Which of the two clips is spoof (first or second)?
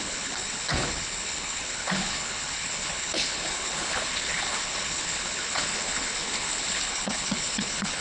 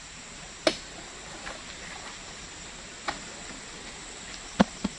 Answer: first